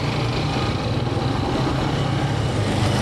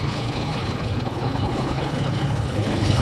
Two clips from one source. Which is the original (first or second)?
first